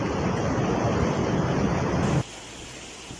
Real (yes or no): yes